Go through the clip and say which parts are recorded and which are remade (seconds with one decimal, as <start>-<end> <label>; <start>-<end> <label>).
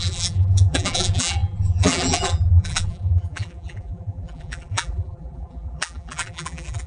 0.0-6.9 remade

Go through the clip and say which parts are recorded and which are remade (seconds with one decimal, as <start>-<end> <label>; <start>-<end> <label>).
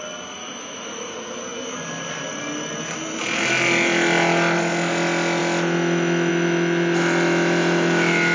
0.0-0.4 recorded; 0.4-1.1 remade; 1.1-8.3 recorded